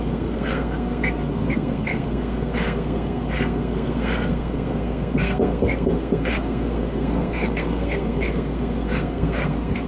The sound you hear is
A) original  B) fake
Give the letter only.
B